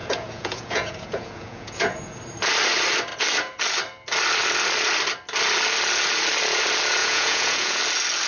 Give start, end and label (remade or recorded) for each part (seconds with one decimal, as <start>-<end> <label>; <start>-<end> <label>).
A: 0.0-2.2 remade; 2.2-7.0 recorded; 7.0-7.8 remade; 7.8-8.3 recorded